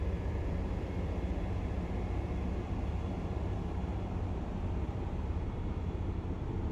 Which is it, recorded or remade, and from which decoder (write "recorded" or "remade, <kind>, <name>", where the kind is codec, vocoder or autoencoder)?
remade, vocoder, BigVGAN v2